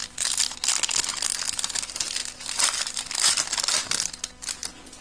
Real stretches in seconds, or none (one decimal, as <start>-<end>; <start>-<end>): 0.0-5.0